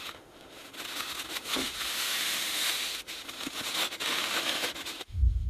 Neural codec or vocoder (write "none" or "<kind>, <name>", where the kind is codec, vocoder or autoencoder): autoencoder, DAC-VAE